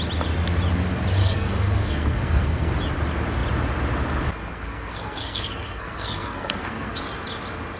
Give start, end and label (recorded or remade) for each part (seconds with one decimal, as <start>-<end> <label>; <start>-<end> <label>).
0.0-1.2 recorded; 1.2-2.7 remade; 2.7-4.5 recorded; 4.5-7.0 remade; 7.0-7.8 recorded